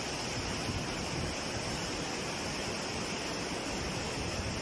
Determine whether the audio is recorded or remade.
recorded